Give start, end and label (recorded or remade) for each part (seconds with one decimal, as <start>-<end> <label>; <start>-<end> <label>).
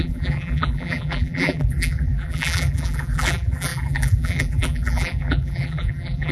0.0-6.3 remade